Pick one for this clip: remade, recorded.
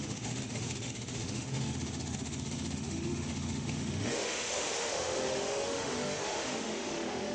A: remade